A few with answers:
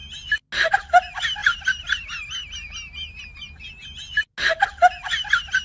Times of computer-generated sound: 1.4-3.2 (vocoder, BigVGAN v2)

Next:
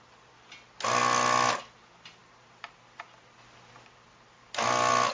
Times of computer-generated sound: none

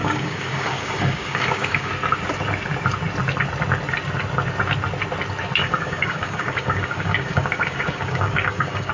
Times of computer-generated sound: 0.0-1.9 (codec, DAC); 5.6-8.9

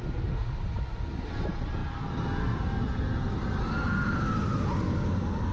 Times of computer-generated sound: none